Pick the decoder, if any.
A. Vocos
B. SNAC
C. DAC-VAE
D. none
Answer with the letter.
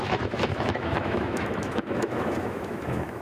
C